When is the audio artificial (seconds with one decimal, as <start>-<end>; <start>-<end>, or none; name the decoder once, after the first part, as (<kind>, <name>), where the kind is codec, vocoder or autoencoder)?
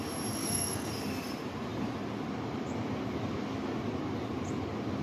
0.4-0.9 (codec, SNAC)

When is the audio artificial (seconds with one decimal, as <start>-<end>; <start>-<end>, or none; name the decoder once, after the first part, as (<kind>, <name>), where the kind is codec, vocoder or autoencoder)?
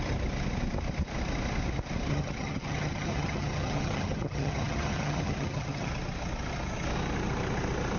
2.1-5.9 (vocoder, HiFi-GAN)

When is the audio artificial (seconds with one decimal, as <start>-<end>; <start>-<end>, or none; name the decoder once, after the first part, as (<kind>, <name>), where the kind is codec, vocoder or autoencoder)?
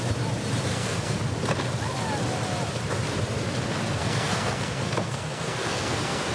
0.7-1.2 (codec, SNAC); 3.9-6.3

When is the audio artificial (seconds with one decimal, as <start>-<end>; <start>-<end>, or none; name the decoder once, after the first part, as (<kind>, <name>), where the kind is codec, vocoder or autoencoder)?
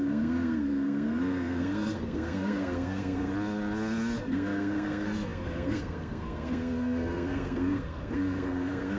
0.0-3.3 (codec, SNAC); 4.2-9.0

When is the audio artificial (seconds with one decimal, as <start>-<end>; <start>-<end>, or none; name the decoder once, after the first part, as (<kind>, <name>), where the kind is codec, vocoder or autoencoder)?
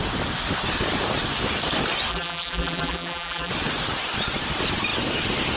2.1-3.5 (vocoder, BigVGAN v2)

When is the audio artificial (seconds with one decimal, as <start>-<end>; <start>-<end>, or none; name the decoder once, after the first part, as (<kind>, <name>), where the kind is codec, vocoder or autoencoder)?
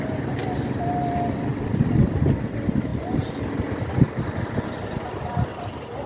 none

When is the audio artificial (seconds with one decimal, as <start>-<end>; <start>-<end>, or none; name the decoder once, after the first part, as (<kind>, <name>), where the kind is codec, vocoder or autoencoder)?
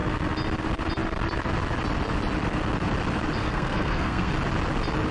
3.4-4.3 (codec, SNAC)